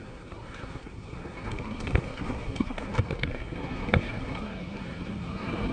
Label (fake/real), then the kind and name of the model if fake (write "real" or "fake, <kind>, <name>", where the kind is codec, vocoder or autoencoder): fake, codec, SNAC